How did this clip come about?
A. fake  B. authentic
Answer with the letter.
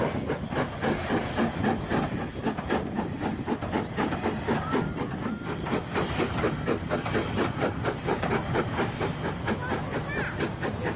B